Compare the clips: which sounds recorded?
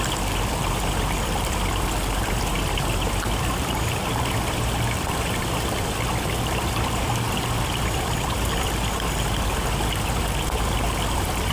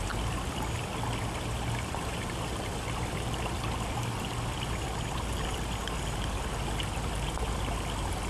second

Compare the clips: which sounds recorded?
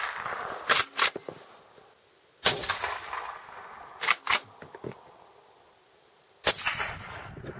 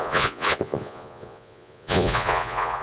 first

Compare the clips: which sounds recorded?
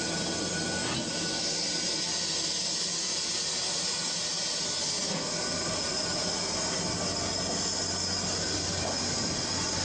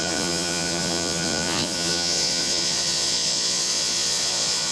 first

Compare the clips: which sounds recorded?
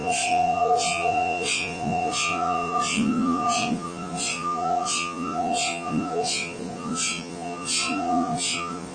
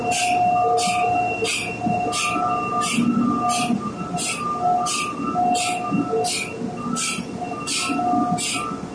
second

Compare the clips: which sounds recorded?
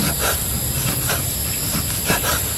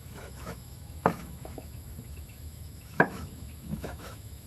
first